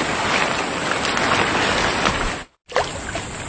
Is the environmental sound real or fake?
real